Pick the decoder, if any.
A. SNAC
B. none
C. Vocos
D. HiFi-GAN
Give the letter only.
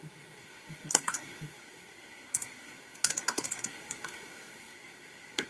A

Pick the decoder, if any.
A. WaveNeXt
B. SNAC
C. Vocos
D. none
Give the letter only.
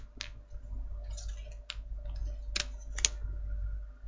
D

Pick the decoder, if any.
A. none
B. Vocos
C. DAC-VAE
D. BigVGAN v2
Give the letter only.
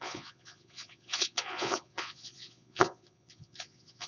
B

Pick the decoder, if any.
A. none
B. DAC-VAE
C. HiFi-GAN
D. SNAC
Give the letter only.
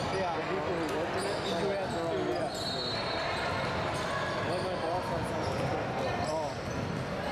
A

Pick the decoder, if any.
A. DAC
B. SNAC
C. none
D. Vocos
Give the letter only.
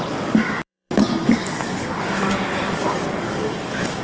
A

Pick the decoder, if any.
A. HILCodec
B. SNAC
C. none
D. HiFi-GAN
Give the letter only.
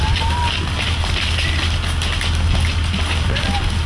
C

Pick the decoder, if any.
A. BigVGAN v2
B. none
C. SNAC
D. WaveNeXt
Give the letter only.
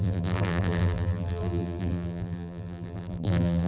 A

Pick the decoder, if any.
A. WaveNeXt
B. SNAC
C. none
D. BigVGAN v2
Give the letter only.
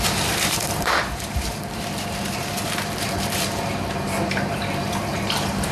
D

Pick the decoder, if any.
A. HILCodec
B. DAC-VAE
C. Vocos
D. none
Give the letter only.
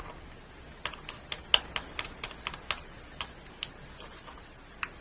D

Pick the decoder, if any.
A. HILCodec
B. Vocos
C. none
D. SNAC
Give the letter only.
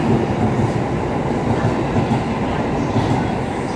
C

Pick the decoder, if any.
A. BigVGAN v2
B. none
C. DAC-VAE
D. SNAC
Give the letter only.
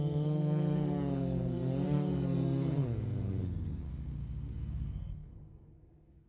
D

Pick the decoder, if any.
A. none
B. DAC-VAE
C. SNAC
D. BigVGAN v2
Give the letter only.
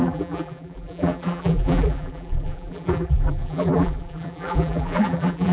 D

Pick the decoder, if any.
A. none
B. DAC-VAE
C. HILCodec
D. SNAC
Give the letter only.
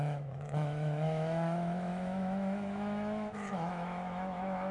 B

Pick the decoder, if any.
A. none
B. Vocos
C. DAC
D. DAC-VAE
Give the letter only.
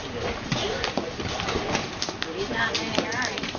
A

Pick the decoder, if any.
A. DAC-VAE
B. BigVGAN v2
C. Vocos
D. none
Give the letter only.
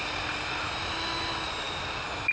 D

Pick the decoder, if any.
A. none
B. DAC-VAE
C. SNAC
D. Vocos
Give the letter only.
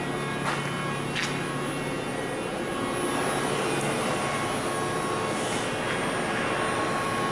A